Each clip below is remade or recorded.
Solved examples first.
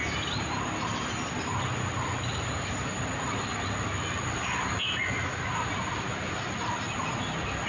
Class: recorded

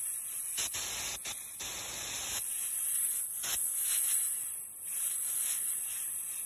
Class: recorded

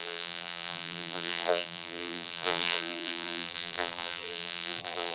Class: remade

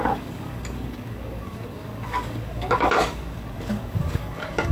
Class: remade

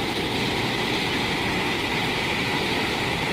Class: recorded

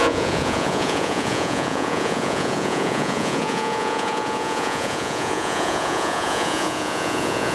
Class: remade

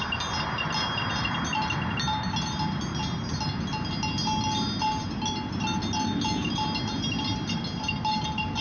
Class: recorded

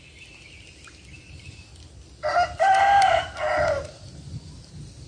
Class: recorded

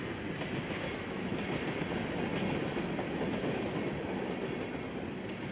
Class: recorded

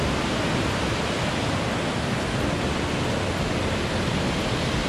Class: recorded